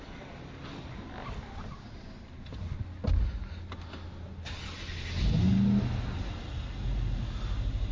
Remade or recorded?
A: recorded